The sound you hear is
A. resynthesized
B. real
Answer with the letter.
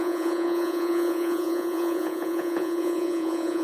A